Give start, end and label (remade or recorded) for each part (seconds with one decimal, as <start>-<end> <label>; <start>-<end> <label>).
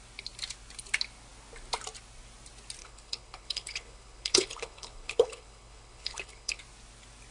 0.0-2.8 recorded; 2.8-6.6 remade; 6.6-7.3 recorded